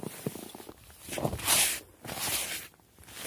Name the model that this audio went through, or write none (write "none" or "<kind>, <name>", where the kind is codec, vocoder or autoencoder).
none